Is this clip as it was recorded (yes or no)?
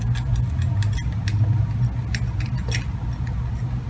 yes